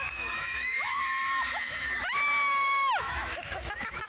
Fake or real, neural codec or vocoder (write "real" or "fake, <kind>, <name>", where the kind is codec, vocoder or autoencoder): fake, autoencoder, DAC-VAE